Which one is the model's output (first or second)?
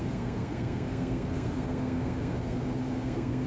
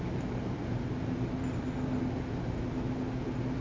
first